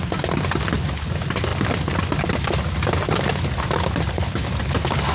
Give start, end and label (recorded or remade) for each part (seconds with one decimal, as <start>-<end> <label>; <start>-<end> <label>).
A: 0.0-5.1 recorded